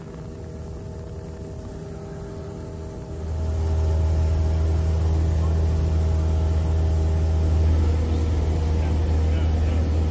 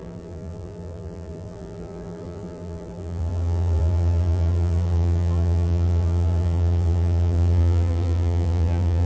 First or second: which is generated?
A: second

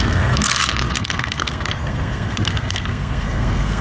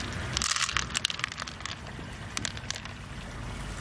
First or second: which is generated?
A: first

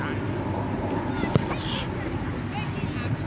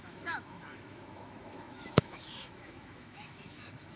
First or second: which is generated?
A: second